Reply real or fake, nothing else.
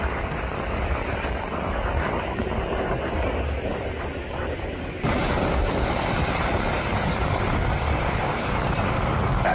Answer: real